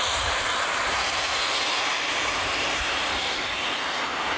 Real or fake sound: fake